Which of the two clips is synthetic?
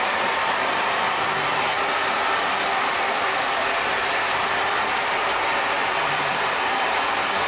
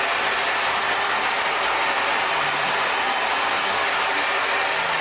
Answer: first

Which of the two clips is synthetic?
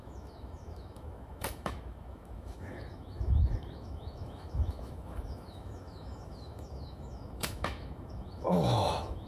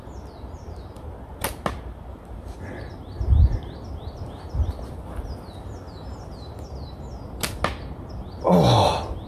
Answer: first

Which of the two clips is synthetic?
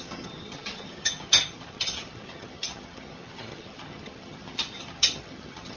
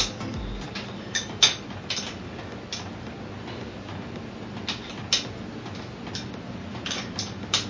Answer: first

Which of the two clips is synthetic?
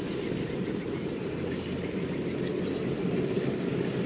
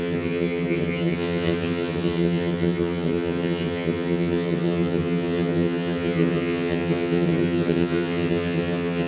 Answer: second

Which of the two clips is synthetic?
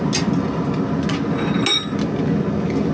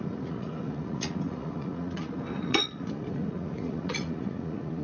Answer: second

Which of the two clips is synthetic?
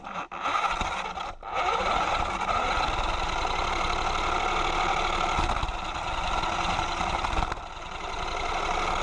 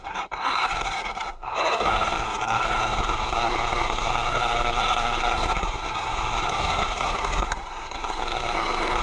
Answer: second